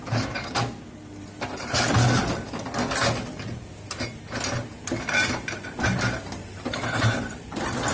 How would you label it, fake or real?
real